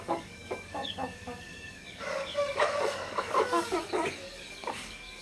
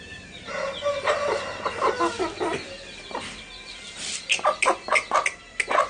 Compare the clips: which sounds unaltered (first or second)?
second